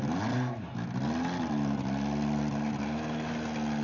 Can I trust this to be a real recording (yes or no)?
yes